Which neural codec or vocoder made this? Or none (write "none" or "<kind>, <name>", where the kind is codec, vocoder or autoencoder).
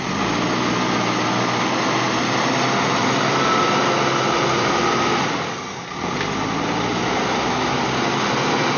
none